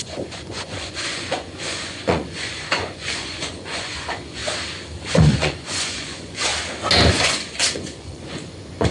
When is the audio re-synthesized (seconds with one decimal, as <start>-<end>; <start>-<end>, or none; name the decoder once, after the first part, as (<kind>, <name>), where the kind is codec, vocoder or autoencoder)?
0.0-4.4 (vocoder, Vocos); 5.1-6.5; 7.1-8.9